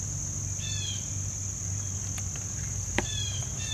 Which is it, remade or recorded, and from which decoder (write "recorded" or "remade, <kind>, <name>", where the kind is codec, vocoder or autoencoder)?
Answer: recorded